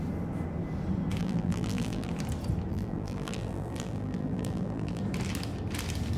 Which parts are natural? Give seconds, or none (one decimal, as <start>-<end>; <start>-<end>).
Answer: 0.0-1.2; 2.1-2.7; 5.0-6.2